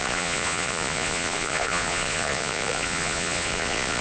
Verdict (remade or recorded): remade